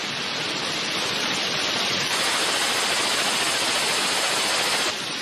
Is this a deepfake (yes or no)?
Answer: no